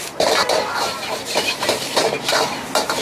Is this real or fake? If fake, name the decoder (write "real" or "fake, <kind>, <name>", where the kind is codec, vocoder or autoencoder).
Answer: fake, vocoder, BigVGAN v2